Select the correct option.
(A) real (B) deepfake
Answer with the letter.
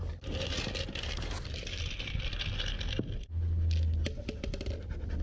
A